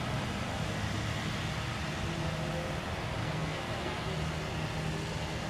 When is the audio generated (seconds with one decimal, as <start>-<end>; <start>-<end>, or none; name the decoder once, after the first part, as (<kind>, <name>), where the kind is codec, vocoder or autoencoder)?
3.2-4.1 (codec, SNAC)